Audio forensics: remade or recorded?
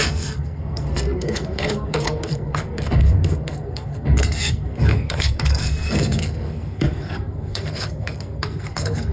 remade